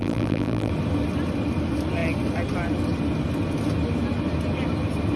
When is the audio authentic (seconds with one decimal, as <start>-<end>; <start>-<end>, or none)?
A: 0.7-5.2